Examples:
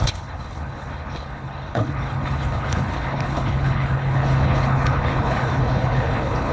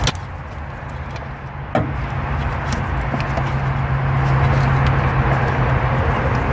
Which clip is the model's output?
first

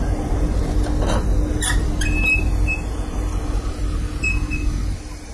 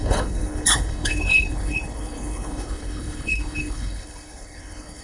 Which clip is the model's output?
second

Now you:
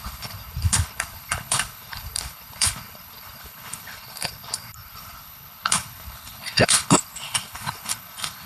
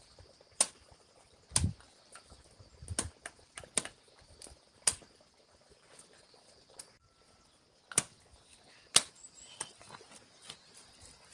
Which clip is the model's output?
first